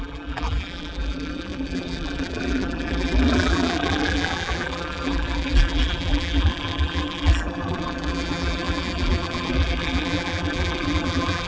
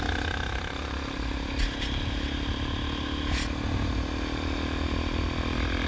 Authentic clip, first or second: second